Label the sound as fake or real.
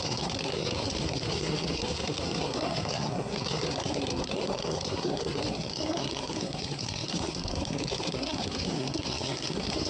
fake